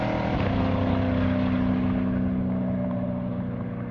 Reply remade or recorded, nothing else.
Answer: recorded